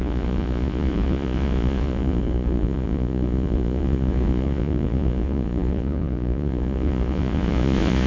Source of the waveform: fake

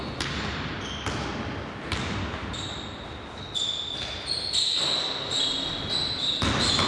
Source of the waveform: real